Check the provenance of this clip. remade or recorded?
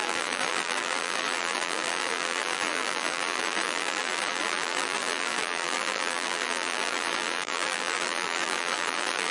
remade